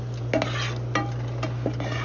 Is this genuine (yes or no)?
yes